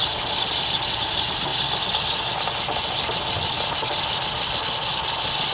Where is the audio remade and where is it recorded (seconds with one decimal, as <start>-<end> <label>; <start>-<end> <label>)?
0.0-5.5 recorded